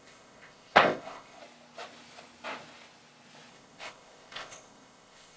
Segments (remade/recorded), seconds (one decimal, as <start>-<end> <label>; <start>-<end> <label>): 0.0-1.4 remade; 1.4-3.5 recorded; 3.5-5.4 remade